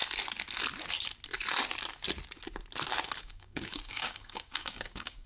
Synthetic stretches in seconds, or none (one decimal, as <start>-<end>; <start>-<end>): 3.2-5.3